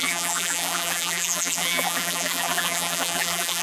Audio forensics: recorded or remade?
remade